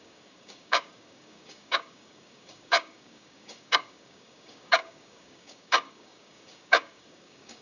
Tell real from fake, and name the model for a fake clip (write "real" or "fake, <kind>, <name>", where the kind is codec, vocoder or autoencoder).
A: fake, codec, DAC